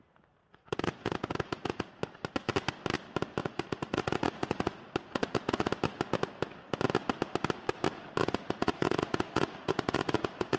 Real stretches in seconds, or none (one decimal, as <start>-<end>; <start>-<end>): 0.0-0.4; 1.9-3.4; 5.7-8.2